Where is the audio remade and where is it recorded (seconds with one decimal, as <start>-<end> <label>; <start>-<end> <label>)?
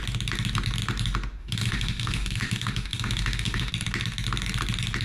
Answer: 0.0-1.4 recorded; 1.4-3.7 remade; 3.7-5.0 recorded